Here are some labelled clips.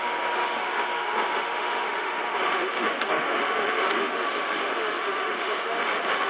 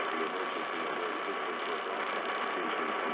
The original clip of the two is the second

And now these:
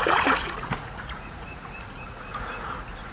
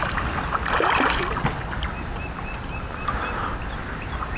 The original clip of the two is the second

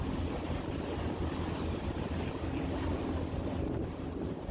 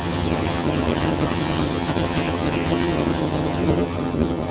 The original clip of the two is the first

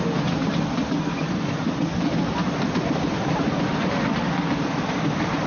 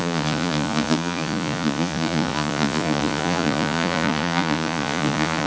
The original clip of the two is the first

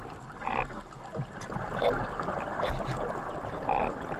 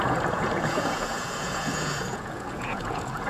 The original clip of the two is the first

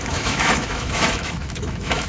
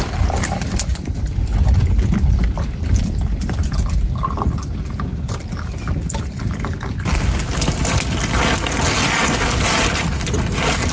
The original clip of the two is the second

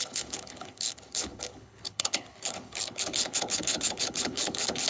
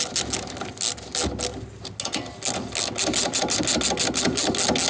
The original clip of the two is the second